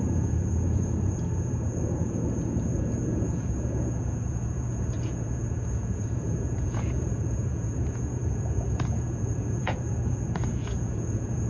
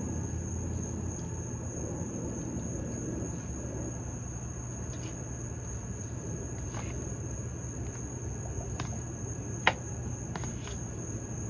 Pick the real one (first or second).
second